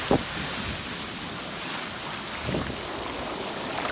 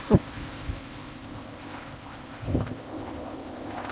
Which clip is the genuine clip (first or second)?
first